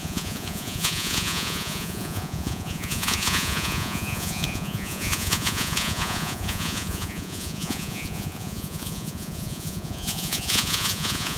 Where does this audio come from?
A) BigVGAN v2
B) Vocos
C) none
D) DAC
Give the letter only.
B